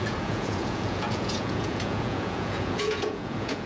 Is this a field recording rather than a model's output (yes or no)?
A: no